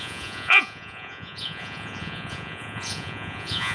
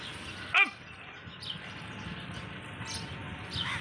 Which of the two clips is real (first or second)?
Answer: second